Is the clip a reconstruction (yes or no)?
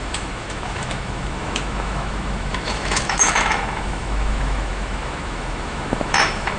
yes